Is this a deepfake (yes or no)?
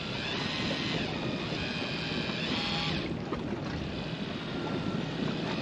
no